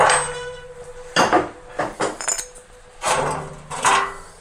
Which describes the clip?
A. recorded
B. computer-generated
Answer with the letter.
A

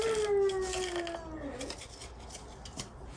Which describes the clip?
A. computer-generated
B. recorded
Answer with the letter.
B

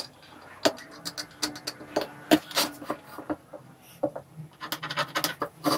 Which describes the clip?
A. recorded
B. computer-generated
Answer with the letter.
A